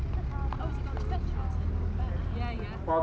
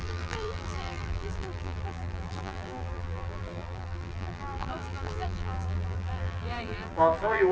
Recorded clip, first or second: first